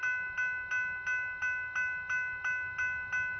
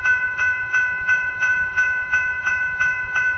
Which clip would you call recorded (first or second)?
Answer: first